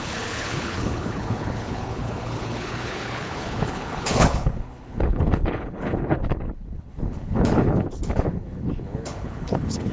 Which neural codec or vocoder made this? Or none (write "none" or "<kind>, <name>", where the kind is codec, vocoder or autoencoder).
codec, HILCodec